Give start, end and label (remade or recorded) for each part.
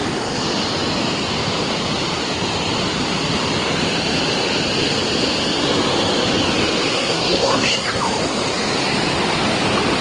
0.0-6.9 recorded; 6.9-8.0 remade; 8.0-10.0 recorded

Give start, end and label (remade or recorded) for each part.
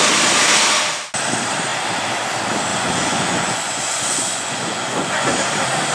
0.0-2.7 recorded; 2.7-5.3 remade; 5.3-5.9 recorded